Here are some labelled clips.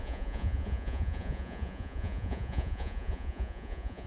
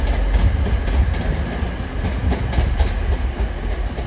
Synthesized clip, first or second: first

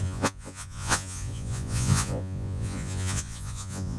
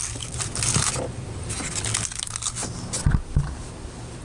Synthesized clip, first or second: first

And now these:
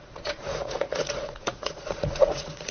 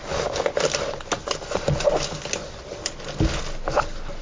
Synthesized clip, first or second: first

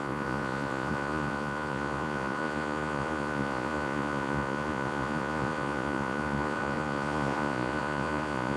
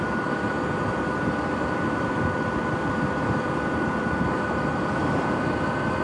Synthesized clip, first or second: first